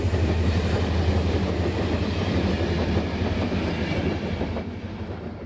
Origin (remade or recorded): recorded